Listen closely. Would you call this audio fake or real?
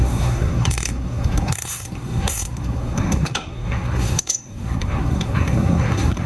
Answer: fake